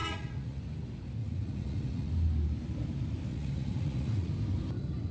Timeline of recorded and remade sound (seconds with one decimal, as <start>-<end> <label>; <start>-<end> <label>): 0.0-0.6 remade; 0.6-1.2 recorded; 1.2-2.1 remade; 2.1-3.3 recorded; 3.3-4.3 remade; 4.3-5.1 recorded